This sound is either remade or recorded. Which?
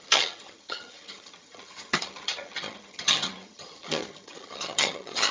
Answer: remade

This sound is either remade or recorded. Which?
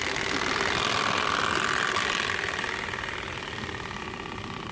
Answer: recorded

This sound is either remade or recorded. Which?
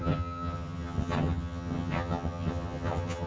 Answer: remade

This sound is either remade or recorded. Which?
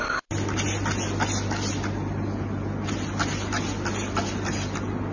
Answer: recorded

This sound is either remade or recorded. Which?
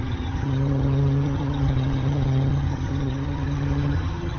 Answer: remade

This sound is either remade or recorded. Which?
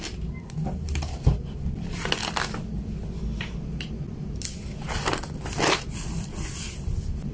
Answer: recorded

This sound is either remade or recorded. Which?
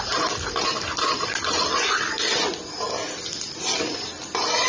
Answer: recorded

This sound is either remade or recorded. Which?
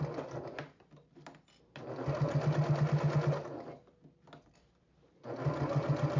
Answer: recorded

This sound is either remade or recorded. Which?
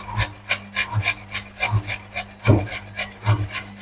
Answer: recorded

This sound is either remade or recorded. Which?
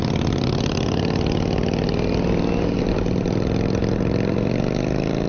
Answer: recorded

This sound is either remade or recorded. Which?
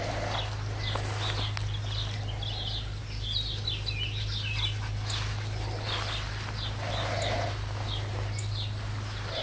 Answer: recorded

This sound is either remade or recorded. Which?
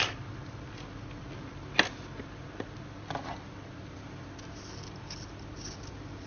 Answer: recorded